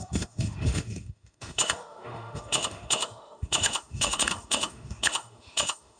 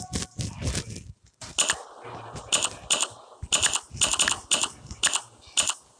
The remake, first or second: first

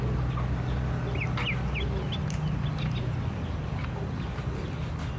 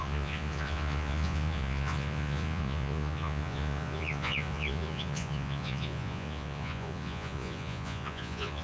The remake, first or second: second